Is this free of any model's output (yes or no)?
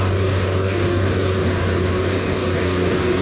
no